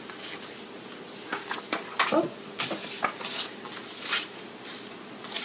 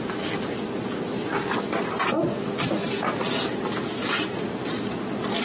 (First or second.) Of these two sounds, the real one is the first